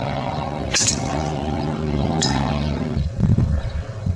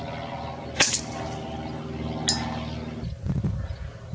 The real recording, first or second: second